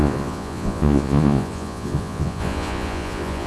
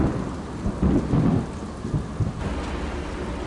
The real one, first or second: second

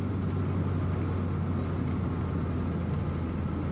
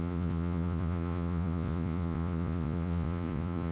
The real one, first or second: first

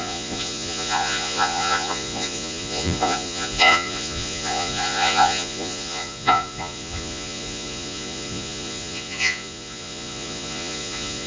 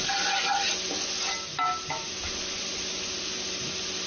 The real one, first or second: second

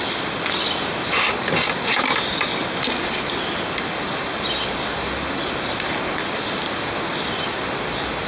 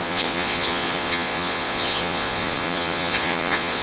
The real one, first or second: first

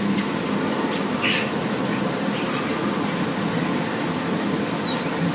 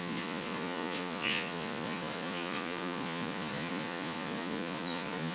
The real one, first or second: first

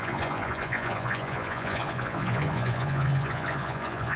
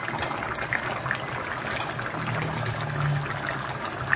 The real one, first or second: second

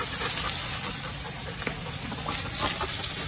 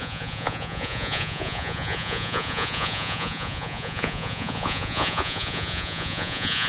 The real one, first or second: first